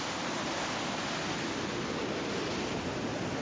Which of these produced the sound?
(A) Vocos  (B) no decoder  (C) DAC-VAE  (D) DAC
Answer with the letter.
B